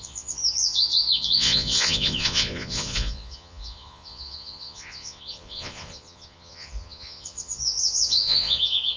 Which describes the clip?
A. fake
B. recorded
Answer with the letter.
A